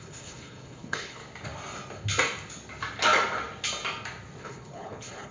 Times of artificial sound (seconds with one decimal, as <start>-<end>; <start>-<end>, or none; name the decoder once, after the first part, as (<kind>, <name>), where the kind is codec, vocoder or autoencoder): 0.0-1.2 (codec, HILCodec); 4.4-5.3